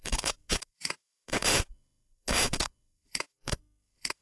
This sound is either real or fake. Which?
fake